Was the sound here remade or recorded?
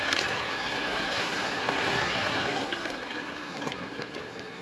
remade